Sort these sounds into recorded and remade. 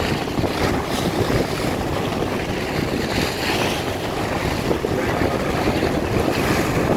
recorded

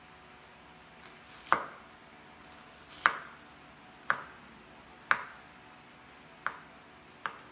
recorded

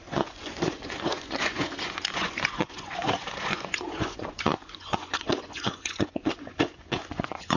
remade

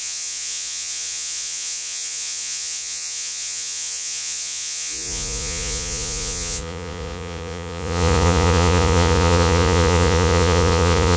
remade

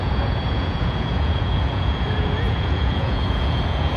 remade